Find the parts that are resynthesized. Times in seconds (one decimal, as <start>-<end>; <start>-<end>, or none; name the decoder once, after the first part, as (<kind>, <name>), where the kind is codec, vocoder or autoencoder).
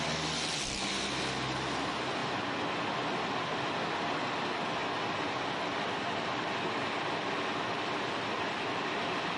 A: none